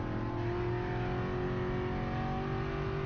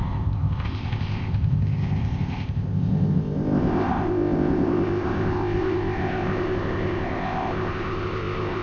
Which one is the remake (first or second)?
second